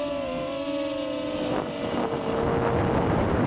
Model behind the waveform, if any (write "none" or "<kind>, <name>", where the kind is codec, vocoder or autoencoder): none